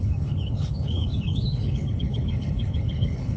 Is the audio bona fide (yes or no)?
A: no